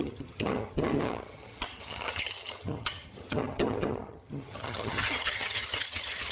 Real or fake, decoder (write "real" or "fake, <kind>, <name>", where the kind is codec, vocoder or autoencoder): fake, vocoder, HiFi-GAN